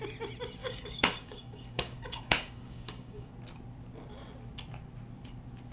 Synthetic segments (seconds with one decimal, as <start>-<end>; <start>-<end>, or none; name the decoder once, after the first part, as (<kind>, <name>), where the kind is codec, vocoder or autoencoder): 0.6-3.3 (codec, DAC)